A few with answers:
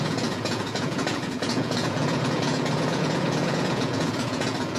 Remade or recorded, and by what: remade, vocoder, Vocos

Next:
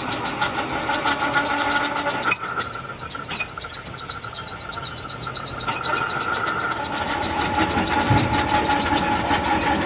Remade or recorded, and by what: recorded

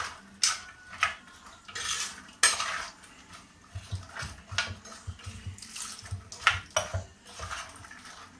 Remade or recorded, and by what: recorded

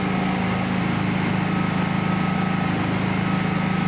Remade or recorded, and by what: recorded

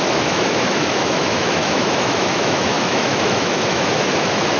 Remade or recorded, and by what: remade, autoencoder, DAC-VAE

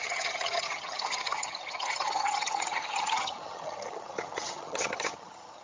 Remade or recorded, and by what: remade, vocoder, HiFi-GAN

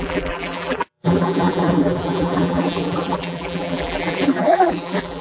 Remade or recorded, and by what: remade, vocoder, BigVGAN v2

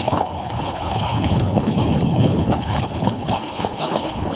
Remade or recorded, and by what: remade, codec, HILCodec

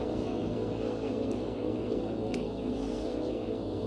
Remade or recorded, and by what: remade, codec, SNAC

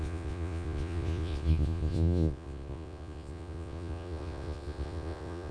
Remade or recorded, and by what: remade, vocoder, Vocos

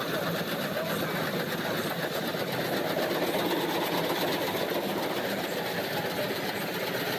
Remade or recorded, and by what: recorded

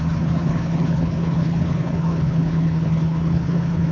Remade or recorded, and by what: remade, codec, HILCodec